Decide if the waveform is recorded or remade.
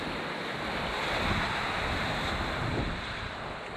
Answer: recorded